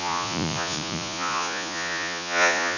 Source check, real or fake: fake